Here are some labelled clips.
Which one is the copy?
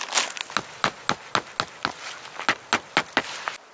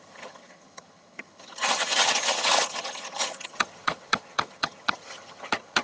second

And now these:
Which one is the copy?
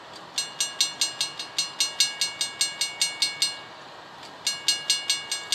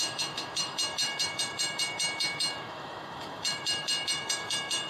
second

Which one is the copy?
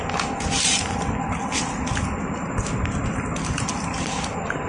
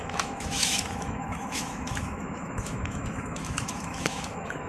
second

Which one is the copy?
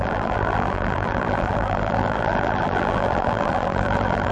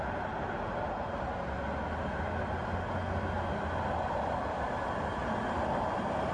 first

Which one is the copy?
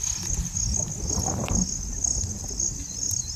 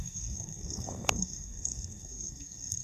second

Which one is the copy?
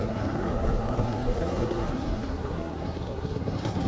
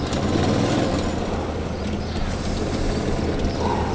first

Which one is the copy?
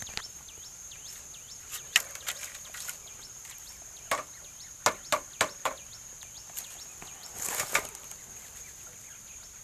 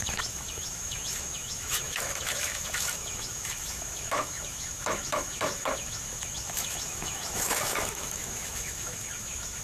second